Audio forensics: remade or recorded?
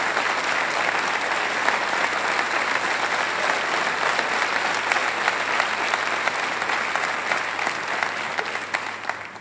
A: recorded